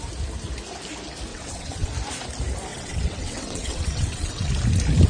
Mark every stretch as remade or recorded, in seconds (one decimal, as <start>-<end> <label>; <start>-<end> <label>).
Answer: 0.0-1.3 recorded; 1.3-1.9 remade; 1.9-2.7 recorded; 2.7-4.5 remade; 4.5-5.1 recorded